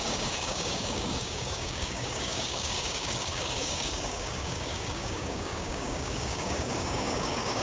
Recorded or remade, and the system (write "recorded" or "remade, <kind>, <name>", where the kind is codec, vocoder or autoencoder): remade, codec, DAC